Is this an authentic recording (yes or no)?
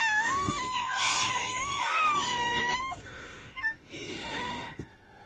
no